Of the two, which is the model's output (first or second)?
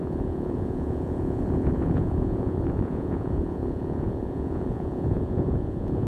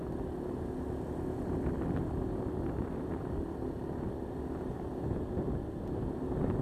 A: first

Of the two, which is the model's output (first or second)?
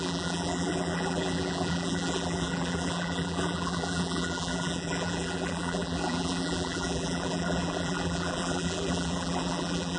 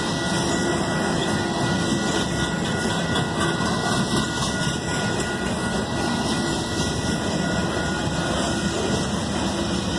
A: first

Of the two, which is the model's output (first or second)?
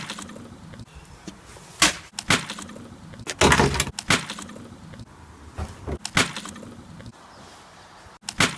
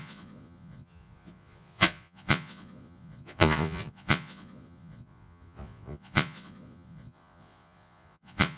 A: second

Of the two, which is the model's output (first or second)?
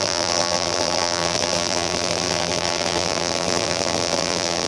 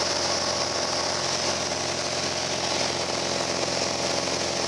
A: first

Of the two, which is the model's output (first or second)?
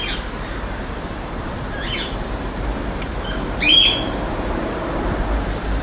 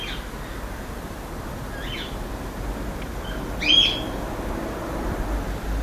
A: first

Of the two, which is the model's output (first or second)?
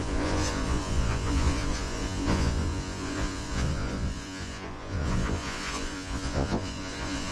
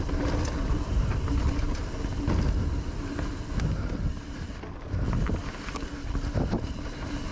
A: first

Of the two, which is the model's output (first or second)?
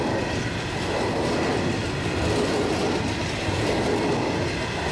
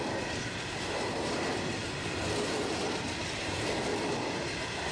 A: second